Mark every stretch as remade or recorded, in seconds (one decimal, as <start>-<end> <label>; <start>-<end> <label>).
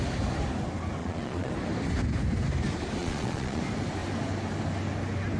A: 0.0-1.0 recorded; 1.0-1.5 remade; 1.5-3.0 recorded; 3.0-3.6 remade; 3.6-5.4 recorded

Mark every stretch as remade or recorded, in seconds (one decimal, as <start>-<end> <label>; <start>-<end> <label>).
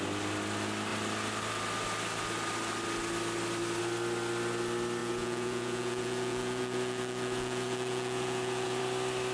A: 0.0-5.0 recorded; 5.0-8.8 remade; 8.8-9.3 recorded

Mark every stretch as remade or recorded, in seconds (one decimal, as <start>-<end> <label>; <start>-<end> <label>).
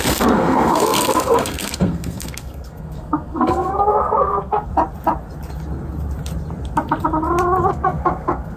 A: 0.0-4.7 remade; 4.7-7.7 recorded; 7.7-8.6 remade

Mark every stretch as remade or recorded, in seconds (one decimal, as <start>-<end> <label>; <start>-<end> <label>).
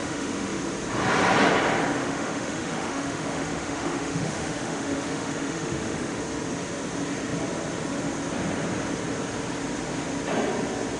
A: 0.0-0.6 remade; 0.6-2.0 recorded; 2.0-6.2 remade; 6.2-11.0 recorded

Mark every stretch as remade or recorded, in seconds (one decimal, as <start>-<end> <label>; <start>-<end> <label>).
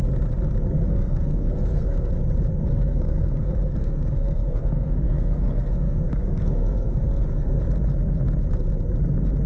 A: 0.0-0.9 recorded; 0.9-2.1 remade; 2.1-2.7 recorded; 2.7-7.6 remade; 7.6-9.5 recorded